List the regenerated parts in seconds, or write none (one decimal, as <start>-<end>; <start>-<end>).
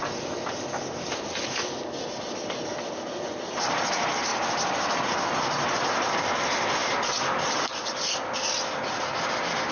4.3-5.0; 6.8-8.1